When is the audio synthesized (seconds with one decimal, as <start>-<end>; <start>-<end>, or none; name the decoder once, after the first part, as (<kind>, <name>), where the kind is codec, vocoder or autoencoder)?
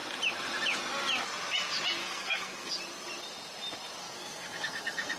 2.0-2.7 (codec, SNAC); 4.0-5.2